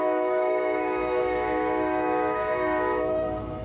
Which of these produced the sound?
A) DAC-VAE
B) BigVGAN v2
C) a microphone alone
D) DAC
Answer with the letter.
A